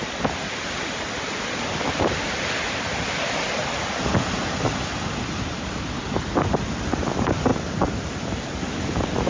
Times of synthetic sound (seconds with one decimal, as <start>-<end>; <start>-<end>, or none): 0.0-9.3

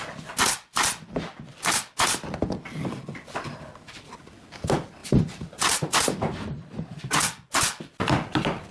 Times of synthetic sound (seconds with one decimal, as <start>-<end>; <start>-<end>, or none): 5.0-7.0

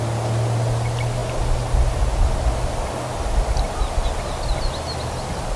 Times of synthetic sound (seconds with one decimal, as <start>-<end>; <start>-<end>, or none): none